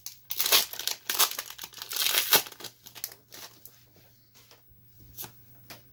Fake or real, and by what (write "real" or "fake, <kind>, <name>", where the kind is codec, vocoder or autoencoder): real